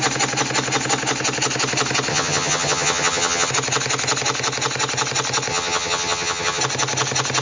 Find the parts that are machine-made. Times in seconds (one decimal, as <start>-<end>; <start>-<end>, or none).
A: 2.1-3.5; 5.5-6.6